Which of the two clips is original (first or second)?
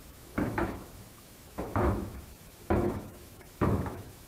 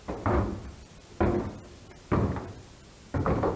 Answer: second